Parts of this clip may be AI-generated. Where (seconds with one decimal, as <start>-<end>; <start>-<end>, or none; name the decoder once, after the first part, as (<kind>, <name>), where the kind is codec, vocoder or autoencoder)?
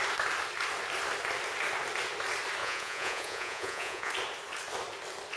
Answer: 2.6-4.1 (vocoder, Vocos)